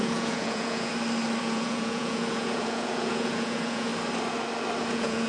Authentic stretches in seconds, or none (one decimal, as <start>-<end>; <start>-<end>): 0.9-1.4; 3.9-4.8